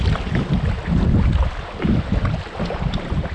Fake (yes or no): no